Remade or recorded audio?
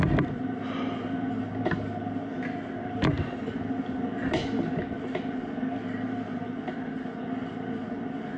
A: recorded